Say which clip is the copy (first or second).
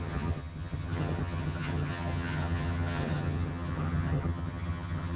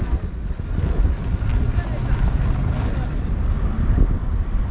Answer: first